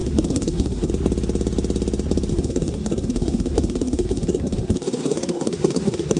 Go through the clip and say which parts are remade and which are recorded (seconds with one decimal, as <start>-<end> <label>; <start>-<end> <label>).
0.0-0.9 remade; 0.9-2.3 recorded; 2.3-6.2 remade